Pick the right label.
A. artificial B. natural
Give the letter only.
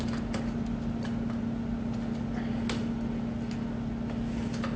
B